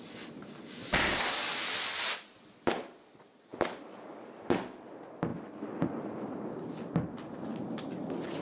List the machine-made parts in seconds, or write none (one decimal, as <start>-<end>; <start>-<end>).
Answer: 3.5-4.5